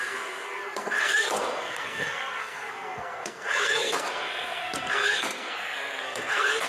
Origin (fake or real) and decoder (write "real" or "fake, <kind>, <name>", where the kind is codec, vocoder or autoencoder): fake, codec, SNAC